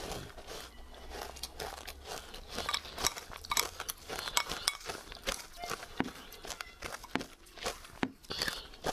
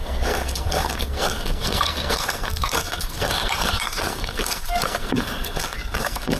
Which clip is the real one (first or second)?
first